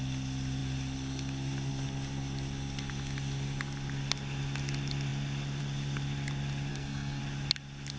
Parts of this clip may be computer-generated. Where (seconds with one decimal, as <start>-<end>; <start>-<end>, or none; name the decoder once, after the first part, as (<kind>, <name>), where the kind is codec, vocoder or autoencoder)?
6.7-7.2 (codec, SNAC)